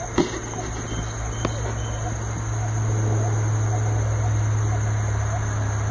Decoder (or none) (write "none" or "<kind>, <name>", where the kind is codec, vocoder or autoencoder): none